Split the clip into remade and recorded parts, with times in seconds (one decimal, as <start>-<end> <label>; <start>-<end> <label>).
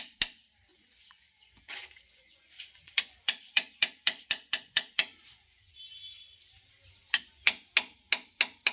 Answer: 0.0-0.7 recorded; 0.7-5.8 remade; 5.8-7.0 recorded; 7.0-7.7 remade; 7.7-8.7 recorded